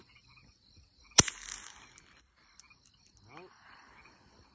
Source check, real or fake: real